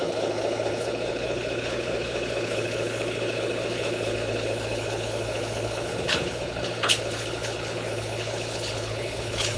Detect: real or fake fake